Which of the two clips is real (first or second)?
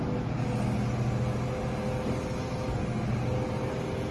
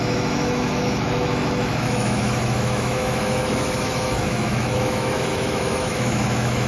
first